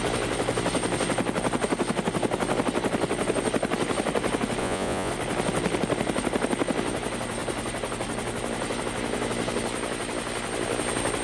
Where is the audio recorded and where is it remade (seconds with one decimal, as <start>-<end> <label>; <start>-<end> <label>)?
0.0-4.6 recorded; 4.6-5.1 remade; 5.1-11.2 recorded

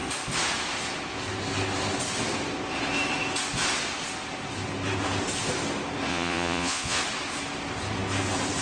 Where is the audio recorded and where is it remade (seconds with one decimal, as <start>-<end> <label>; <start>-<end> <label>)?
0.0-6.1 recorded; 6.1-7.0 remade; 7.0-8.6 recorded

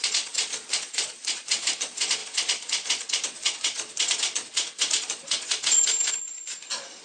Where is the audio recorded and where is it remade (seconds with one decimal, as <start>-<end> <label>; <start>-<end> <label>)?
0.0-7.0 remade

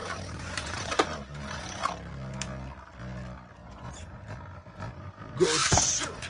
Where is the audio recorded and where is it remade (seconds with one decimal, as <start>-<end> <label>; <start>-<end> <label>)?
0.0-1.8 remade; 1.8-3.6 recorded; 3.6-4.2 remade; 4.2-5.6 recorded; 5.6-6.3 remade

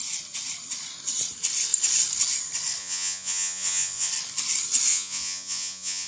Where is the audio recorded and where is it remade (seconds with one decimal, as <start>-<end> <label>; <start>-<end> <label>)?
0.0-2.8 recorded; 2.8-4.1 remade; 4.1-4.9 recorded; 4.9-6.1 remade

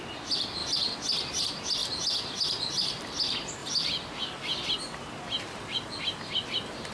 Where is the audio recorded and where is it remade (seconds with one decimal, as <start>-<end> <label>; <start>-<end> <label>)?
0.0-6.9 recorded

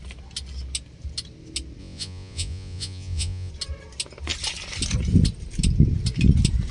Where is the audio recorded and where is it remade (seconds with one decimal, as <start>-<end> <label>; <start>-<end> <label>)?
0.0-1.8 recorded; 1.8-3.5 remade; 3.5-6.7 recorded

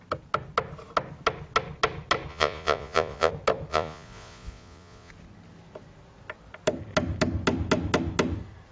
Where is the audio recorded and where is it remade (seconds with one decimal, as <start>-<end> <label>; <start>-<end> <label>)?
0.0-2.3 recorded; 2.3-3.3 remade; 3.3-3.7 recorded; 3.7-5.1 remade; 5.1-8.7 recorded